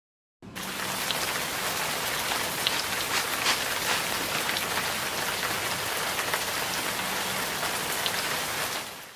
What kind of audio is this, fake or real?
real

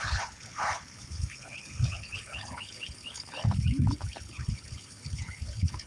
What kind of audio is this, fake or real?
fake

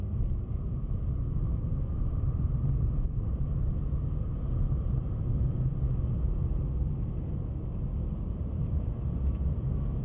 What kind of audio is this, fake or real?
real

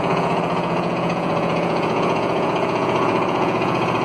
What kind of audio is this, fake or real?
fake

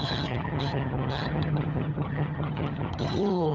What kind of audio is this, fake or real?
fake